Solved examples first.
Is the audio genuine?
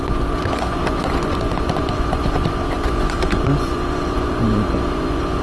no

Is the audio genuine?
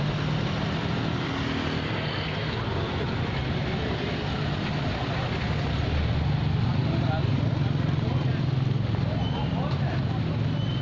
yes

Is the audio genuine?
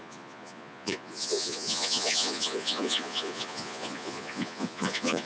no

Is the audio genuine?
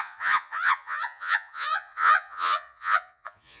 no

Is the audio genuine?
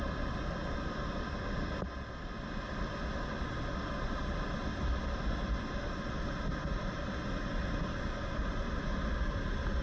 yes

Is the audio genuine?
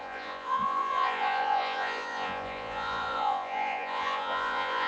no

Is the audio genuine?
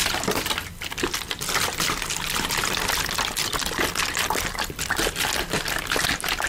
yes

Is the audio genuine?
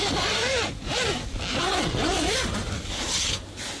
yes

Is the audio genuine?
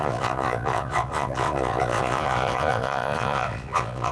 no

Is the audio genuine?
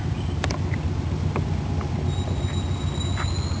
yes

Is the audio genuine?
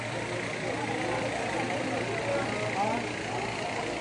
yes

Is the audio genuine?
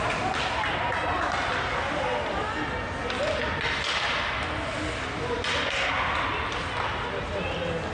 yes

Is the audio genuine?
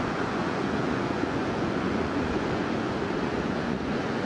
no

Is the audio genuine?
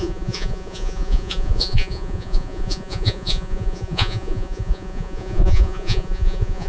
no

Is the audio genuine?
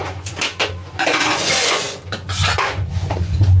no